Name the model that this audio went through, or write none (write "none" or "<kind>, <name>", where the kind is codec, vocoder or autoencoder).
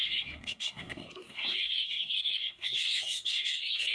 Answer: codec, SNAC